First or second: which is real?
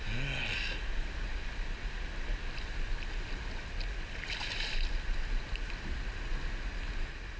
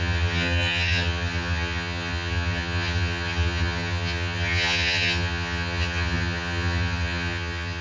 first